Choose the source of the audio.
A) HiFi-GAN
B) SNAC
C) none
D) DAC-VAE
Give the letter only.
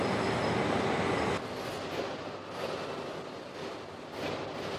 C